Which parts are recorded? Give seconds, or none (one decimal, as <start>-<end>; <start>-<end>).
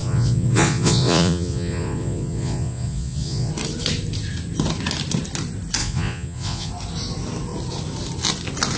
3.5-5.8; 6.7-8.8